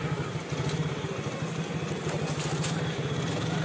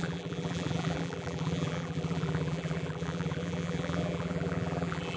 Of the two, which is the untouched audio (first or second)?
first